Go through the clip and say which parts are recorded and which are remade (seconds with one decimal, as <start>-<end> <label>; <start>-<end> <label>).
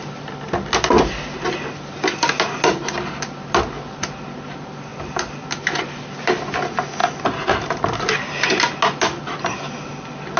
0.0-10.4 recorded